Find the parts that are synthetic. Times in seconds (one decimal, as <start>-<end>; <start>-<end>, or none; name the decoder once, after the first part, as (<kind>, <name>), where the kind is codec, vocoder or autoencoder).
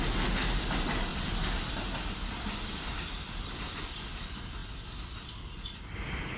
1.1-3.8 (vocoder, BigVGAN v2); 4.6-5.3